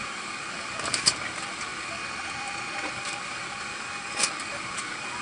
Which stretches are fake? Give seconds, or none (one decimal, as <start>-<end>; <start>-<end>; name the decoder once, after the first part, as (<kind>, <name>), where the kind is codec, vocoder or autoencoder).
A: 0.0-2.0 (codec, DAC); 2.9-5.2